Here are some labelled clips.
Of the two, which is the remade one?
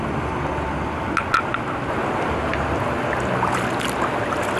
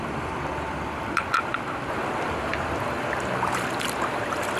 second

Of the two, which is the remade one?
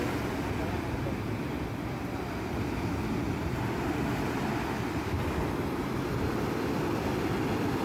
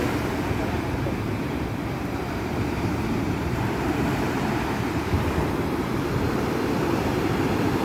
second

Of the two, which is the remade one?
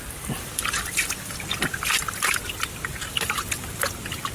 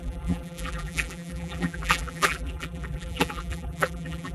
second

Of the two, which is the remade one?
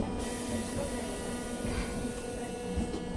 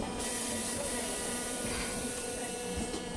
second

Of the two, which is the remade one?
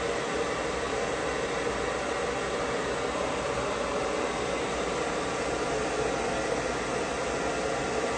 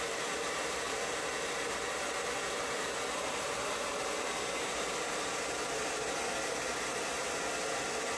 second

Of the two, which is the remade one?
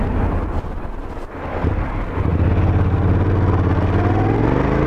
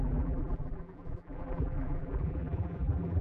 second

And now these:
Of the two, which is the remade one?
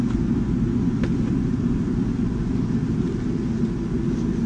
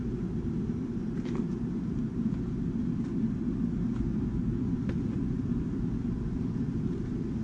second